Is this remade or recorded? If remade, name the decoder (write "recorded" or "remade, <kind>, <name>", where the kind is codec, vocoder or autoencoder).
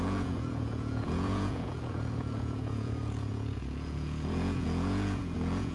remade, vocoder, Vocos